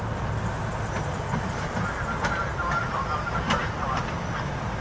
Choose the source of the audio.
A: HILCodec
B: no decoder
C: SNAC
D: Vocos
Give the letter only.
B